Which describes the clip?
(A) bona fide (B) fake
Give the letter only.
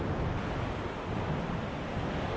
A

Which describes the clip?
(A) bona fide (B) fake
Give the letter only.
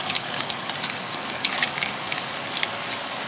B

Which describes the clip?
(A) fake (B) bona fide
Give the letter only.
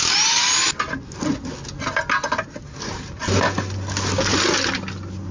B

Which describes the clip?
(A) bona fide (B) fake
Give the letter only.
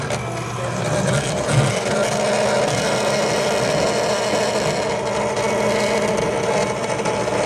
A